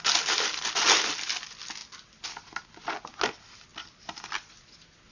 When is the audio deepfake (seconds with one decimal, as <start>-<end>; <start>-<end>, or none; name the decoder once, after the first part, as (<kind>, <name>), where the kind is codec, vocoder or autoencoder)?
none